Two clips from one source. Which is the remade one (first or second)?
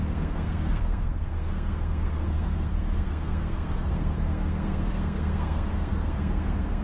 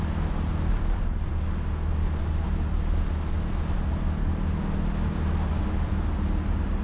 first